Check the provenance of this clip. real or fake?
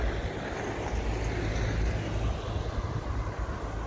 real